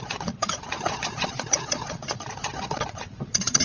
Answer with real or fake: fake